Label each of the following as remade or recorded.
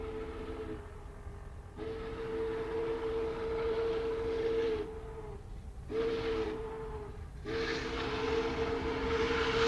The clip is recorded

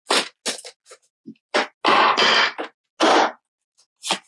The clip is recorded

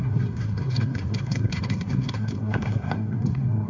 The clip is remade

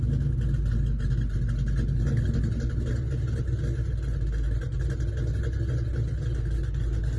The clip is recorded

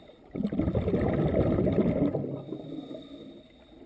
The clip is recorded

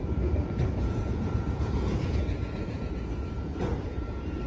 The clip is remade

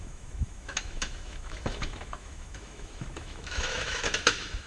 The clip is remade